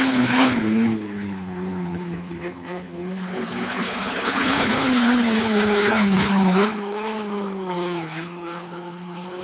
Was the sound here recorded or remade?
remade